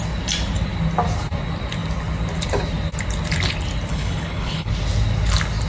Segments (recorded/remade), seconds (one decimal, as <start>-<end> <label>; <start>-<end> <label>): 0.0-3.9 recorded; 3.9-4.7 remade; 4.7-5.7 recorded